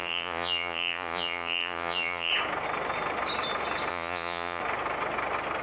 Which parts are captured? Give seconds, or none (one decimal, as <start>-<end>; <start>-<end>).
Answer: 2.3-3.9; 4.6-5.6